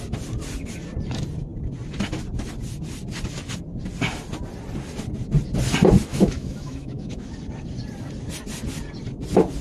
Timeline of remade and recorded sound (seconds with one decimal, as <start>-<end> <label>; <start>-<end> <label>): 0.0-6.1 recorded; 6.1-7.3 remade; 7.3-9.6 recorded